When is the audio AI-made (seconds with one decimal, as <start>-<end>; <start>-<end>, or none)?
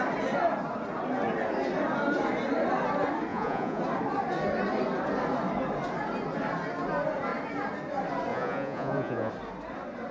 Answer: 3.3-3.8; 8.3-9.3